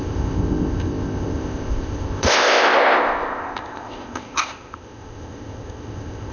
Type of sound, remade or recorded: remade